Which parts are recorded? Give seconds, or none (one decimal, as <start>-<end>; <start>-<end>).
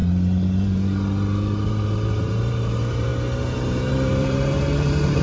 0.0-1.7; 3.1-3.9